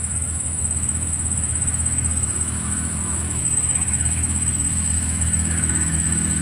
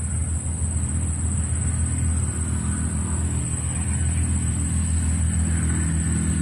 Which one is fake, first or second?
first